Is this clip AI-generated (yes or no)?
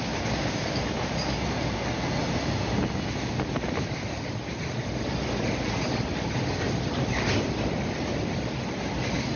no